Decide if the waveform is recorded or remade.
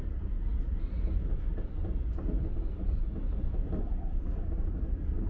recorded